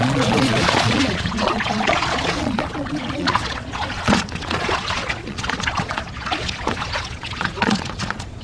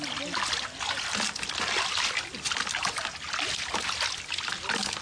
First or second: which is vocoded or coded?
first